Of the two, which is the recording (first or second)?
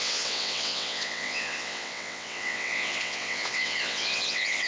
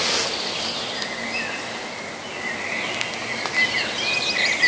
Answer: second